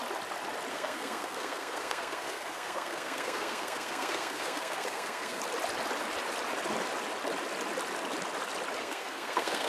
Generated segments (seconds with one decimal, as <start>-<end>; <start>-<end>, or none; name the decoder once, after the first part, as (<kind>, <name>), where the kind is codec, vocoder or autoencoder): 0.7-5.4 (codec, SNAC); 8.8-9.7